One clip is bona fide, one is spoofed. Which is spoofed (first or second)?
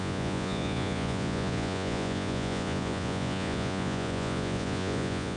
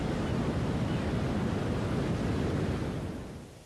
first